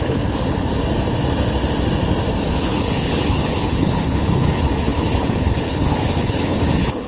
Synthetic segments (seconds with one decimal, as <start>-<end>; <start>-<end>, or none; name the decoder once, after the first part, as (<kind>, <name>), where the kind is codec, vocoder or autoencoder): 0.0-0.7 (codec, HILCodec); 2.5-7.1